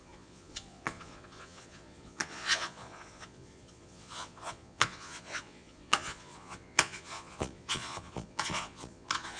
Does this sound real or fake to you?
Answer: fake